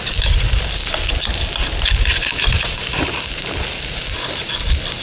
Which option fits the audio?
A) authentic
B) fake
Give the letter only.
A